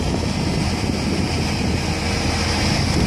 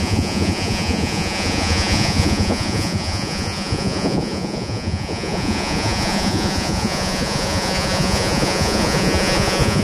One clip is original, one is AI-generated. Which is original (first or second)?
first